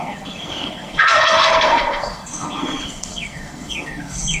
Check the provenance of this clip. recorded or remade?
remade